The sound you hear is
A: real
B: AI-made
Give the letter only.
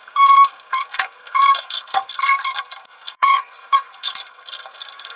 B